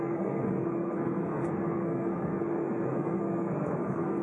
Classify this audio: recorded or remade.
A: remade